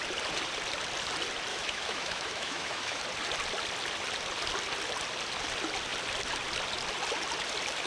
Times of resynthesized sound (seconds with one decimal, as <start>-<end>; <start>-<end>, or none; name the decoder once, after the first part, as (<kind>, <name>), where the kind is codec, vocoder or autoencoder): 1.5-3.0 (autoencoder, DAC-VAE)